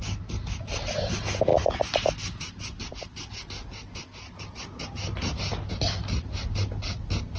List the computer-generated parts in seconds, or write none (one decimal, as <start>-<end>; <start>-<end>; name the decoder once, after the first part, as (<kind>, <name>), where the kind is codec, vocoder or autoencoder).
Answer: none